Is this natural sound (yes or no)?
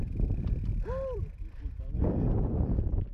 no